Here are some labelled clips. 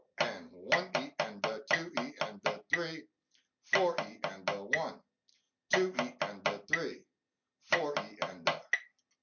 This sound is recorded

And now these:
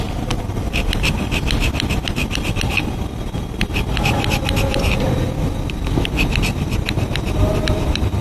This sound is recorded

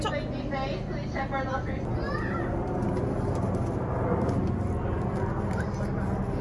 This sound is recorded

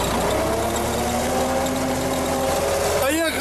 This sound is recorded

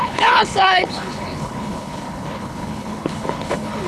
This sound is remade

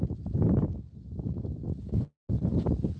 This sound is recorded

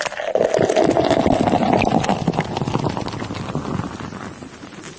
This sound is recorded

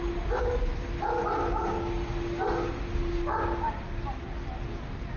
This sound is recorded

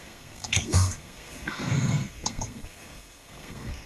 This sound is remade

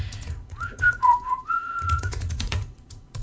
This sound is remade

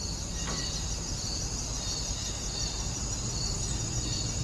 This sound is recorded